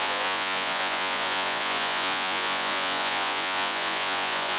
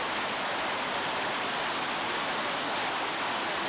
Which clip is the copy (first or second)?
first